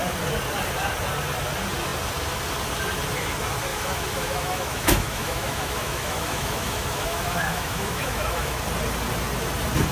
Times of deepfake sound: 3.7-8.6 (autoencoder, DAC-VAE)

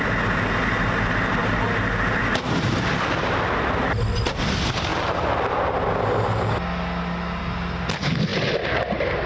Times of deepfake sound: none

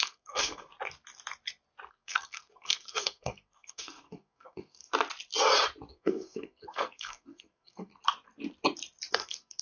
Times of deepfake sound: 0.0-0.7 (codec, SNAC); 1.9-4.9; 5.9-7.9; 9.1-9.6